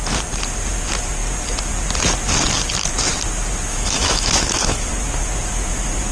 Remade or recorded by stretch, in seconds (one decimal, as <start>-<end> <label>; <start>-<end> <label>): 0.0-3.7 recorded; 3.7-4.9 remade; 4.9-6.1 recorded

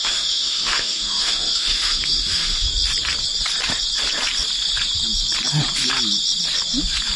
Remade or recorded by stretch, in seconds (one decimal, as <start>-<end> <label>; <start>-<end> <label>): 0.0-2.7 remade; 2.7-7.2 recorded